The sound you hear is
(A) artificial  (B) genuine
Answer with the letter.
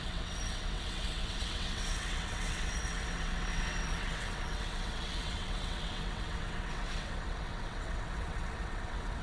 A